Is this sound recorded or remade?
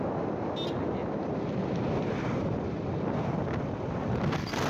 recorded